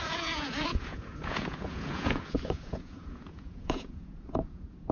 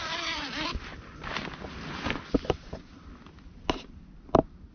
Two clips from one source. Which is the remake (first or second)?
first